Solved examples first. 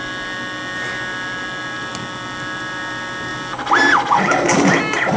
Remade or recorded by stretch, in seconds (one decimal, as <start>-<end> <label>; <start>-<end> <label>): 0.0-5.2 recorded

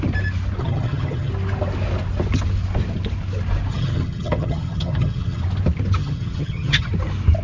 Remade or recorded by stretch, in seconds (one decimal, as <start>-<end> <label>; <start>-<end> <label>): 0.0-0.6 recorded; 0.6-1.3 remade; 1.3-3.7 recorded; 3.7-5.4 remade; 5.4-6.0 recorded; 6.0-6.9 remade; 6.9-7.4 recorded

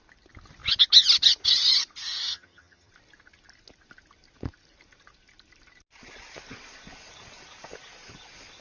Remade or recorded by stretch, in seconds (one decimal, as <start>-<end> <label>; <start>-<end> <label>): 0.0-2.3 recorded; 2.3-2.9 remade; 2.9-8.6 recorded

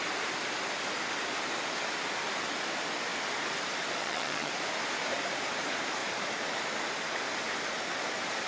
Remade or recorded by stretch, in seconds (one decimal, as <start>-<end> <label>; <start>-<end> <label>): 0.0-4.0 recorded; 4.0-4.5 remade; 4.5-8.5 recorded

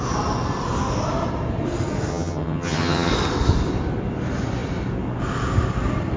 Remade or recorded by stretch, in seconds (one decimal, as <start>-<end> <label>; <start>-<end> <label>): 0.0-2.1 recorded; 2.1-3.1 remade; 3.1-6.2 recorded

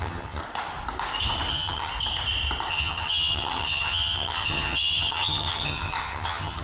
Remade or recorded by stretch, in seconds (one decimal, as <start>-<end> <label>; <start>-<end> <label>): 0.0-0.4 remade; 0.4-1.5 recorded; 1.5-1.9 remade; 1.9-2.7 recorded; 2.7-6.6 remade